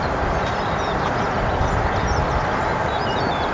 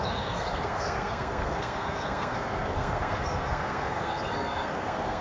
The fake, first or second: second